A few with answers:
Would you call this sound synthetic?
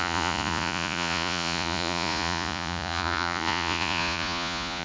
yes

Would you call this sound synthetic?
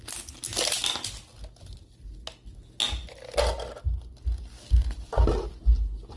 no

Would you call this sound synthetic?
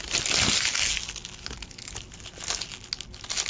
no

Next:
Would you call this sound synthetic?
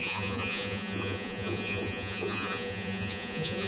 yes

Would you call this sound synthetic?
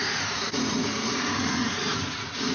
yes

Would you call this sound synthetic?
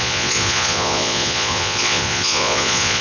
yes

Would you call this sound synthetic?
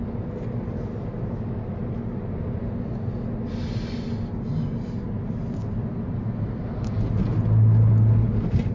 no